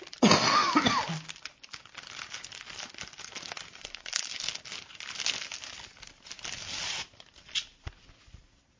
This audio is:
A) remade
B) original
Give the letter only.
B